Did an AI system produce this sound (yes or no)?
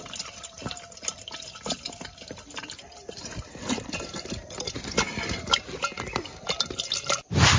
yes